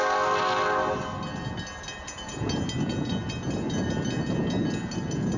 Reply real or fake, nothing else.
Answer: real